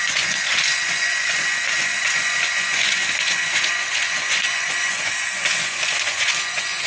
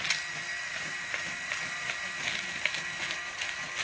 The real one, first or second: second